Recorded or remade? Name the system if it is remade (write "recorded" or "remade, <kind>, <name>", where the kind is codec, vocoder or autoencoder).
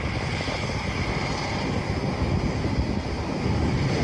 recorded